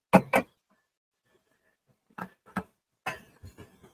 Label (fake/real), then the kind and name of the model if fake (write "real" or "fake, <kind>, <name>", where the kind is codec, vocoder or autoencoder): real